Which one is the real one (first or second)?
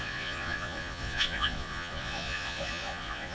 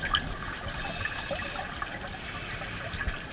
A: second